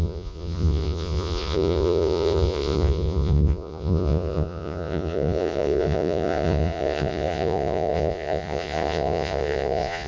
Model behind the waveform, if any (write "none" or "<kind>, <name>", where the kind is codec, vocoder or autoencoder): vocoder, Vocos